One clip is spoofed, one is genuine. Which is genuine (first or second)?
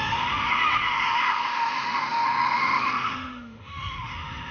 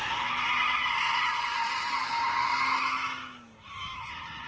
second